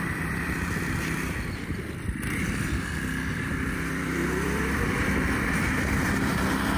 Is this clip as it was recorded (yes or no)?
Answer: no